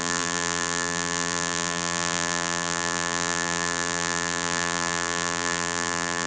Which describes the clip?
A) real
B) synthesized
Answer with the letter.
B